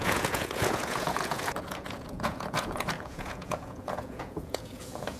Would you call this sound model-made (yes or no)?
yes